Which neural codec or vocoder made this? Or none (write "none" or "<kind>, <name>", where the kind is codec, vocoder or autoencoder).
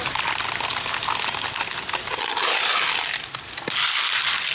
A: none